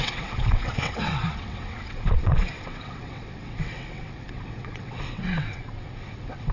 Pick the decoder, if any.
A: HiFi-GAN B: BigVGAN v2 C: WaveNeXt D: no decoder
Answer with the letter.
C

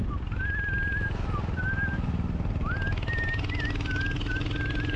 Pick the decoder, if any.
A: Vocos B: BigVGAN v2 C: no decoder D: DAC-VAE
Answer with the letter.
C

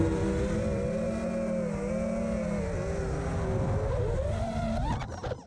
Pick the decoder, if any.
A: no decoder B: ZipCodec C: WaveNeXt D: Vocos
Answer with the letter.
A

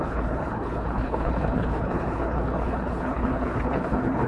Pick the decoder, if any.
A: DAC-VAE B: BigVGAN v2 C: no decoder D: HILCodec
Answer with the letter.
D